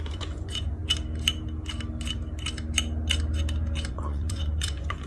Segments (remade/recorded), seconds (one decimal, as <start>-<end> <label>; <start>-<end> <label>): 0.0-0.8 remade; 0.8-3.9 recorded; 3.9-5.1 remade

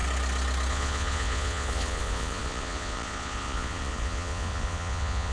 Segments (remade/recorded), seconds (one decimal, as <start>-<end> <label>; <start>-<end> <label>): 0.0-0.7 recorded; 0.7-5.3 remade

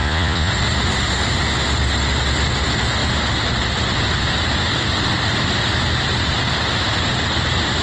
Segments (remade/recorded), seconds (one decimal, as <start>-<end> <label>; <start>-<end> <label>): 0.0-0.5 remade; 0.5-7.8 recorded